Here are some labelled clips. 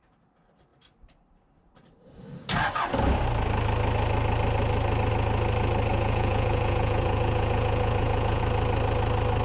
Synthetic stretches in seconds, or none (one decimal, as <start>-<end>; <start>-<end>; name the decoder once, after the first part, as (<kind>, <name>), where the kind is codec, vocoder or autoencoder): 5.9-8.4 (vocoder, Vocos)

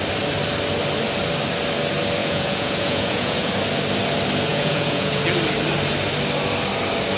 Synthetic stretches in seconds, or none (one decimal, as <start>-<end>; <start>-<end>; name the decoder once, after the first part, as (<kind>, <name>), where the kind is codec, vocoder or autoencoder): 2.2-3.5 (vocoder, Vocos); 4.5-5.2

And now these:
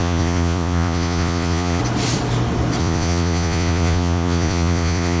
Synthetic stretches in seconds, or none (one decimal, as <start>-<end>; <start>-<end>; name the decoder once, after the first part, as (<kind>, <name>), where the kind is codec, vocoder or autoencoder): 0.0-1.8 (vocoder, Vocos); 2.8-5.2

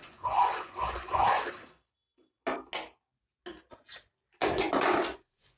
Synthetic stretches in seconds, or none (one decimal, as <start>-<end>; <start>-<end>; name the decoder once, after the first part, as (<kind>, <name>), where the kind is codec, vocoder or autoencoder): 0.0-1.4 (vocoder, Vocos); 4.4-5.6